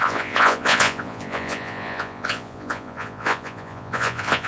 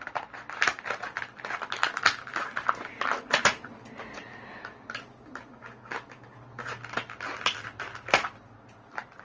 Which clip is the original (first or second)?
second